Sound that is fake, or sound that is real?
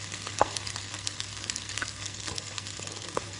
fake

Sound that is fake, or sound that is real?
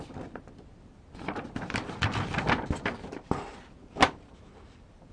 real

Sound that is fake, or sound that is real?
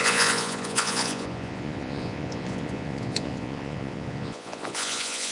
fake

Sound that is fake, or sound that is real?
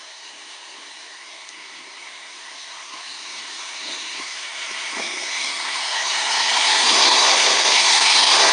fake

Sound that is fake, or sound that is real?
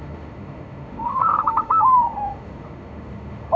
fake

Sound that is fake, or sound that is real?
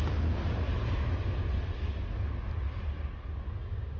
real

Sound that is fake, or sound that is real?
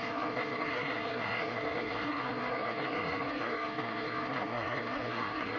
fake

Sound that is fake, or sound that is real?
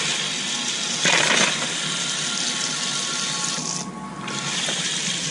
real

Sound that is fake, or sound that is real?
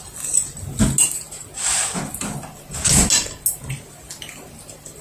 real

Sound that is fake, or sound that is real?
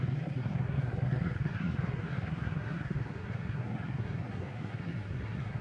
fake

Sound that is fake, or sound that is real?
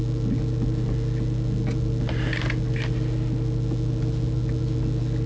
real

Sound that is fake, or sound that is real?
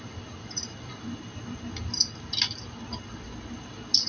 real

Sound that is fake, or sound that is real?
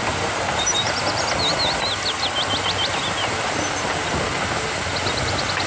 real